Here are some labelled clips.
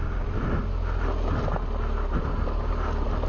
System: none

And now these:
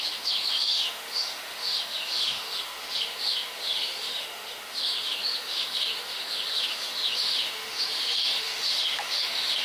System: autoencoder, DAC-VAE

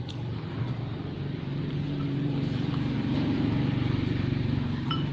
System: vocoder, BigVGAN v2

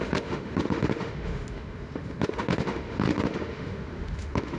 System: autoencoder, DAC-VAE